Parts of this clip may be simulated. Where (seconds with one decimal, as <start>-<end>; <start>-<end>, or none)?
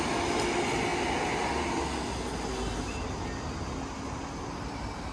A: none